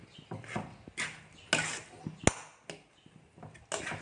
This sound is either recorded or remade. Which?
recorded